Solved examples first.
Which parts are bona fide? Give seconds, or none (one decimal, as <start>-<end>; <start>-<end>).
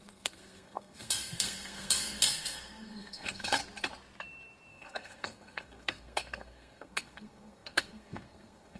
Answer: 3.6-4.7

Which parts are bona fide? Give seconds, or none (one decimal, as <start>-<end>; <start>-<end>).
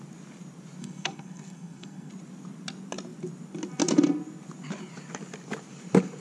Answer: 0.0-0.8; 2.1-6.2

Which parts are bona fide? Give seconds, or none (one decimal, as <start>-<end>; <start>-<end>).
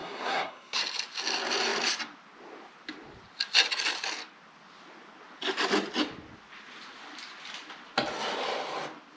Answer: 0.8-9.2